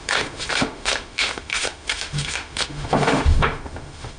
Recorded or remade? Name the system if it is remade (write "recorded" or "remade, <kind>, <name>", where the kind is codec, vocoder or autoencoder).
remade, autoencoder, DAC-VAE